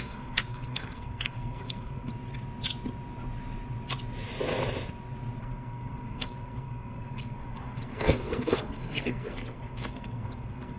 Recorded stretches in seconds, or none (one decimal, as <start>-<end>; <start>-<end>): 2.1-5.4